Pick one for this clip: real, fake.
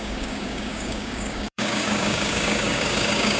fake